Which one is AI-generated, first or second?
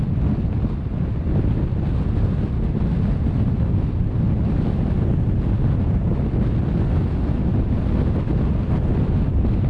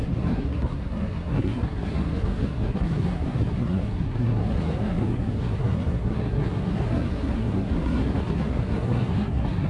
second